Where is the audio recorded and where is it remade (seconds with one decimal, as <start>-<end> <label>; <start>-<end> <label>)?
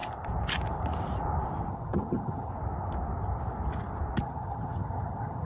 0.0-1.7 recorded; 1.7-2.5 remade; 2.5-4.2 recorded; 4.2-5.5 remade